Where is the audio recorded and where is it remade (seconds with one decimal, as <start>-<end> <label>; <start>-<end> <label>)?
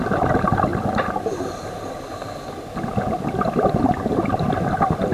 0.0-5.1 recorded